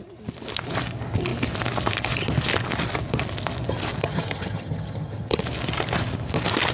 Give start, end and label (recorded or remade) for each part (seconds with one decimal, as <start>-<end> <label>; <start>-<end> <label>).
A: 0.0-4.0 recorded; 4.0-5.4 remade; 5.4-6.7 recorded